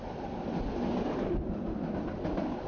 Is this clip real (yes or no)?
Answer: yes